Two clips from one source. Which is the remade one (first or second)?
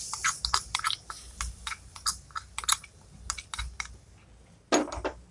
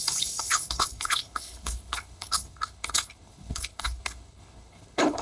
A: second